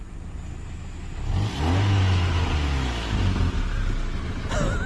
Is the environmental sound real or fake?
real